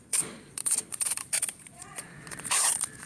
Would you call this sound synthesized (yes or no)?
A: yes